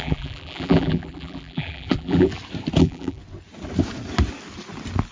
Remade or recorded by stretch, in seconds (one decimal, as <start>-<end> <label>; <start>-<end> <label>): 0.0-2.3 remade; 2.3-2.8 recorded; 2.8-3.2 remade; 3.2-5.1 recorded